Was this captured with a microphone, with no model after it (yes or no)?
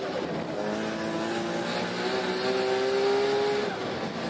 yes